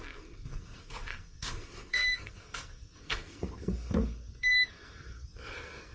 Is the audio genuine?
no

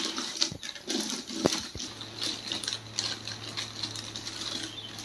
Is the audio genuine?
yes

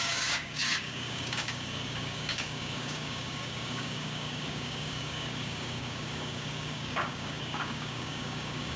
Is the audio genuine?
no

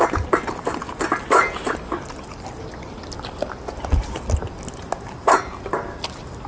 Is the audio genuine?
yes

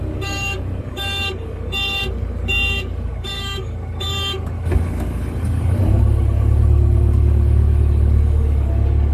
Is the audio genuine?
no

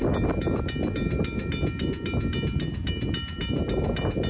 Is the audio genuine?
yes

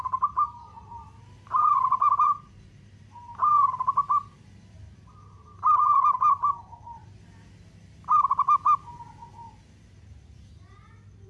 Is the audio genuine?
yes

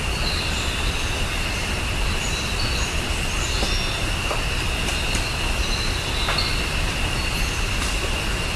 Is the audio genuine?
yes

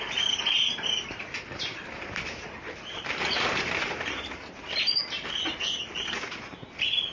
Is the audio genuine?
yes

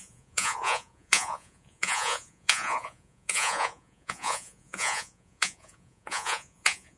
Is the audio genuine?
no